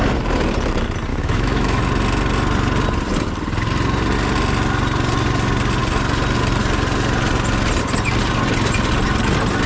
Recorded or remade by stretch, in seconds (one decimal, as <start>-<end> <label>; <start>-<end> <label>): 0.0-1.1 recorded; 1.1-1.8 remade; 1.8-9.7 recorded